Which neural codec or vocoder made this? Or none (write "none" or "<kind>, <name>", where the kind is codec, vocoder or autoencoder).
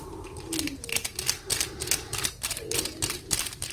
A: vocoder, BigVGAN v2